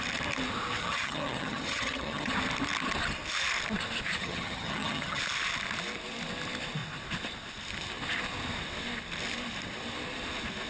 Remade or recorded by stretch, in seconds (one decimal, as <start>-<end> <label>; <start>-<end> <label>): 0.0-0.8 recorded; 0.8-2.3 remade; 2.3-4.2 recorded; 4.2-5.2 remade; 5.2-10.7 recorded